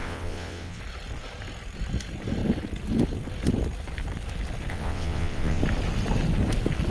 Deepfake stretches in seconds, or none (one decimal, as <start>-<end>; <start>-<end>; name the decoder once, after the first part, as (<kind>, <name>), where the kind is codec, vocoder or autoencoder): 0.0-0.8 (vocoder, WaveNeXt); 4.7-5.6